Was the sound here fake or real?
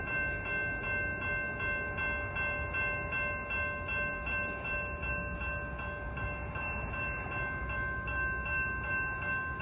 real